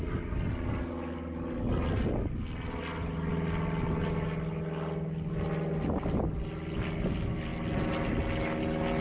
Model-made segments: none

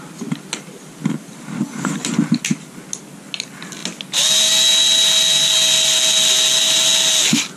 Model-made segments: none